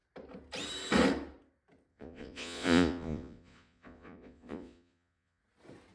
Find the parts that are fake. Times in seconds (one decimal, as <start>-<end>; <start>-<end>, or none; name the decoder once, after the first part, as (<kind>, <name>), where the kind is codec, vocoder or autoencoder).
1.9-5.4 (vocoder, Vocos)